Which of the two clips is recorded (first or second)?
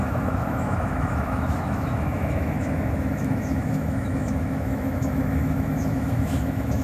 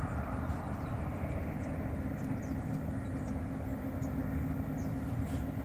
second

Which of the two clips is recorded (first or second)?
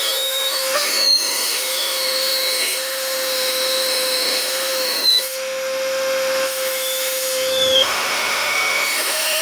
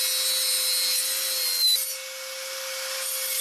second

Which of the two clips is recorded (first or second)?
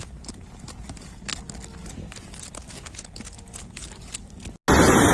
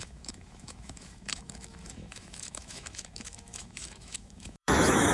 first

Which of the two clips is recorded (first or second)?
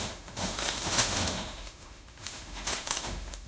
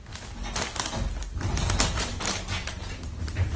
second